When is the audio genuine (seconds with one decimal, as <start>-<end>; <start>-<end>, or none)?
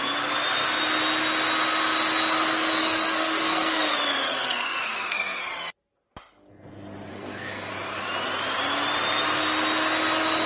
0.0-2.8; 3.8-4.3; 5.4-7.1; 7.7-10.5